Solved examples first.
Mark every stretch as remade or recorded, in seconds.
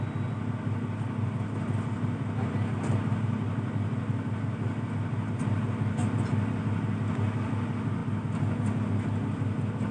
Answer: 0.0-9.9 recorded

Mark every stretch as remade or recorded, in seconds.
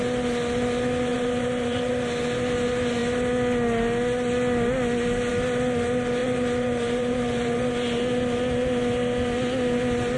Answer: 0.0-1.1 recorded; 1.1-1.9 remade; 1.9-6.2 recorded; 6.2-7.7 remade; 7.7-10.2 recorded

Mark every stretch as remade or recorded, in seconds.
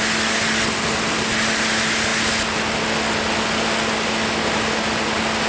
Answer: 0.0-5.5 recorded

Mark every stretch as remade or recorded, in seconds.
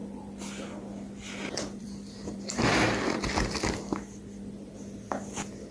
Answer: 0.0-5.7 remade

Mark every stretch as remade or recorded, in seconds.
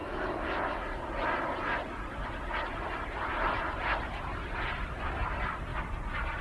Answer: 0.0-6.4 recorded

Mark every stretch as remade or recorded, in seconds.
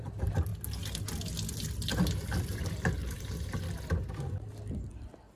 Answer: 0.0-3.0 recorded; 3.0-3.6 remade; 3.6-5.4 recorded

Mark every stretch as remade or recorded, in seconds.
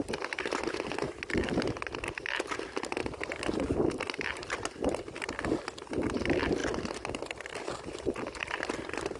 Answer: 0.0-3.0 recorded; 3.0-3.5 remade; 3.5-6.6 recorded; 6.6-7.1 remade; 7.1-9.2 recorded